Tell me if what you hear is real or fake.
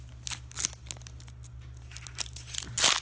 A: real